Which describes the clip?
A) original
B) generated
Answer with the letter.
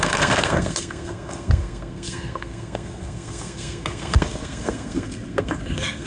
B